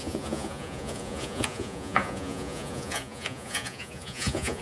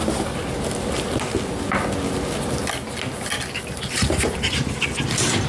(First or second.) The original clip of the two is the second